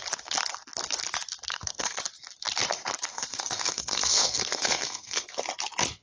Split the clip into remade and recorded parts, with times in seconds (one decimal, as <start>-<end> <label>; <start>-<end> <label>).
0.0-1.5 recorded; 1.5-2.0 remade; 2.0-3.1 recorded; 3.1-5.4 remade; 5.4-6.0 recorded